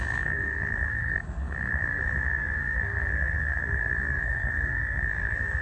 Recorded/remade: remade